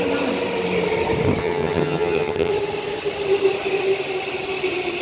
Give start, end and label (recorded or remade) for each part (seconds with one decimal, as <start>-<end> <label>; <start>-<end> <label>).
0.0-1.4 recorded; 1.4-2.5 remade; 2.5-5.0 recorded